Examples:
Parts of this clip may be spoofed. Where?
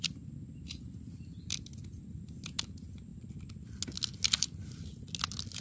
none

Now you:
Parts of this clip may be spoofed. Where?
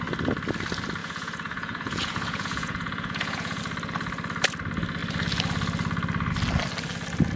1.0-3.6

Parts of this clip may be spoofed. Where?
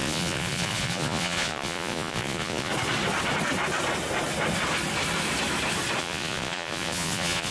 0.0-2.7; 6.0-7.5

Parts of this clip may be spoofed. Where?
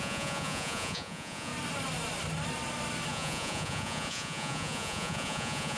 0.0-1.5; 3.1-5.8